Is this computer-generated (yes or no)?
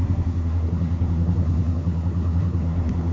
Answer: yes